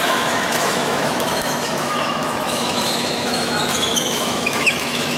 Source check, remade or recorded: remade